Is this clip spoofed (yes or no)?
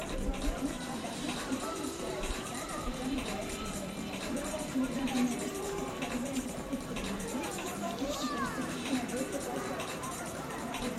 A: yes